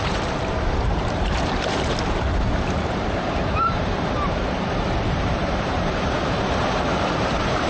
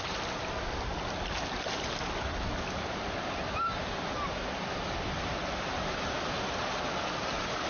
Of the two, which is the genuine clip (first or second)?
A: second